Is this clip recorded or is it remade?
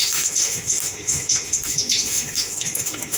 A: remade